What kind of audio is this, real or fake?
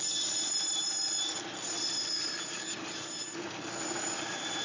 real